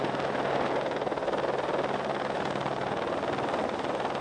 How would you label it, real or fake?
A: real